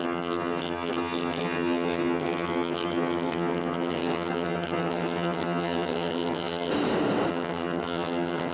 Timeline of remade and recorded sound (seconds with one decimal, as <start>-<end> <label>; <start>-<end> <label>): 0.0-6.7 remade; 6.7-7.3 recorded; 7.3-8.5 remade